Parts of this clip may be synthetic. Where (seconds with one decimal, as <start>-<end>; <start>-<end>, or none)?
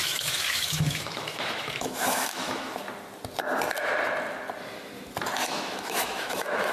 0.0-2.8; 5.4-6.7